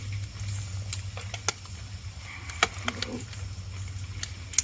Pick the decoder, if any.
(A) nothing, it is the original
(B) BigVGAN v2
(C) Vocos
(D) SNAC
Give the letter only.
A